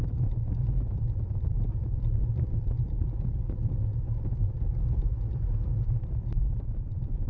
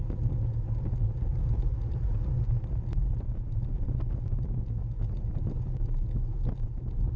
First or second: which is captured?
second